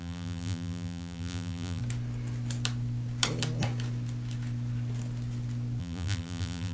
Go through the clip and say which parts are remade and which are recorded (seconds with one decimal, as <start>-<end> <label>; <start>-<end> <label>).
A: 0.0-1.8 remade; 1.8-5.8 recorded; 5.8-6.7 remade